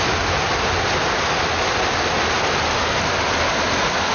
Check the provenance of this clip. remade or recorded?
recorded